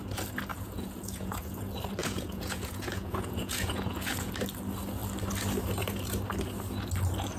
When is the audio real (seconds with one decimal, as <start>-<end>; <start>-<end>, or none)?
0.0-0.5; 1.6-2.0; 4.3-7.4